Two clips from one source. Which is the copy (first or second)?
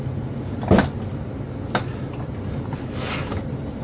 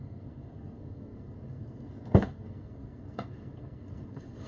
second